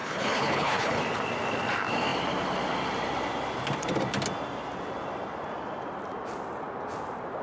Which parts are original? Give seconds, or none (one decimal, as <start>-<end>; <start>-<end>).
1.0-7.4